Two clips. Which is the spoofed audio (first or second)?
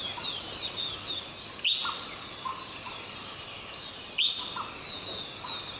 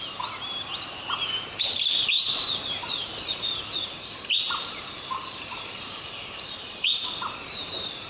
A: second